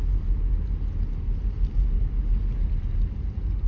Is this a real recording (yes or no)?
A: yes